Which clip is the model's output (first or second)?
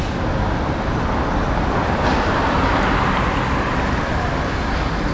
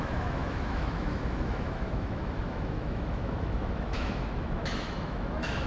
second